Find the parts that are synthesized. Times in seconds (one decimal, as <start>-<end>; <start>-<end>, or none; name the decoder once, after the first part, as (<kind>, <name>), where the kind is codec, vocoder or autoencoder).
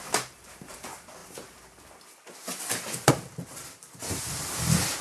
none